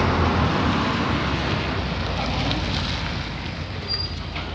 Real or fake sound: real